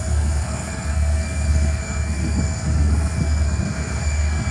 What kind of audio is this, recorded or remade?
remade